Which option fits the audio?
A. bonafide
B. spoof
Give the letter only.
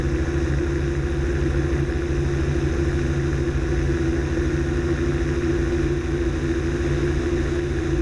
A